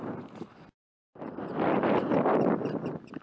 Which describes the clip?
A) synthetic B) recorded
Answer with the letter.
B